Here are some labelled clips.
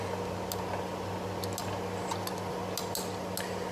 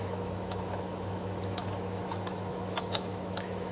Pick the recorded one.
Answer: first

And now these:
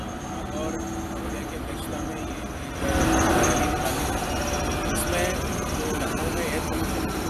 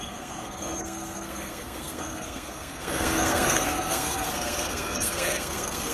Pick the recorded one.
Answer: first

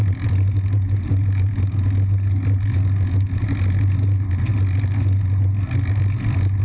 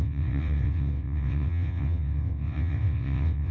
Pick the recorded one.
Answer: first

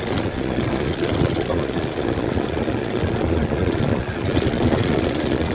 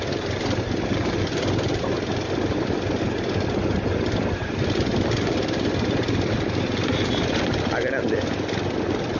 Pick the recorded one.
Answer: second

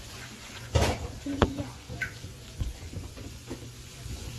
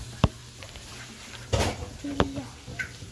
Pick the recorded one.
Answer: second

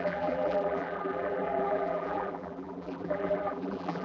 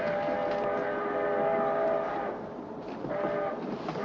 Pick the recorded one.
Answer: second